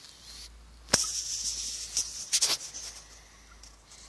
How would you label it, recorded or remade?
recorded